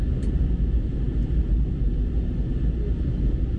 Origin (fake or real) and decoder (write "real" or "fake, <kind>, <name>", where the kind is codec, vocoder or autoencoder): real